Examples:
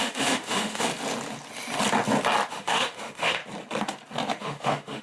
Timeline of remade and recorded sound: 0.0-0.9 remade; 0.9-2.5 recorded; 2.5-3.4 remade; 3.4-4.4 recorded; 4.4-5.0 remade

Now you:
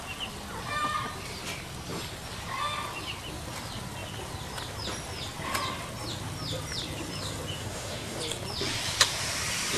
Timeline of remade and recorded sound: 0.0-7.6 recorded; 7.6-8.2 remade; 8.2-9.8 recorded

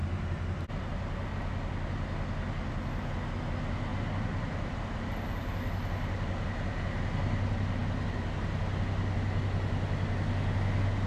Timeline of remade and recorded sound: 0.0-11.1 recorded

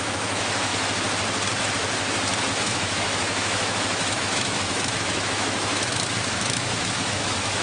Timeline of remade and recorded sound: 0.0-0.7 remade; 0.7-2.5 recorded; 2.5-7.6 remade

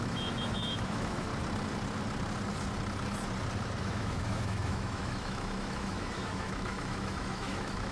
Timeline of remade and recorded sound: 0.0-1.3 remade; 1.3-3.8 recorded; 3.8-7.9 remade

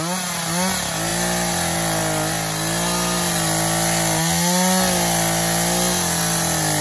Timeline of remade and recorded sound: 0.0-6.8 recorded